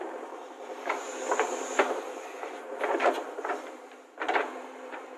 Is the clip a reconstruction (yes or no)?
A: yes